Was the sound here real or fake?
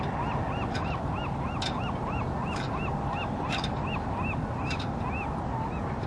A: real